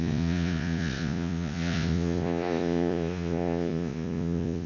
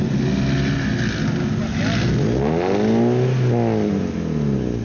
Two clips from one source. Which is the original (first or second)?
second